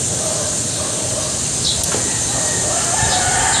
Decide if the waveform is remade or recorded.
recorded